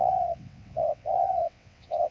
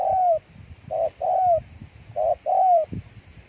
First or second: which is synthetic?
first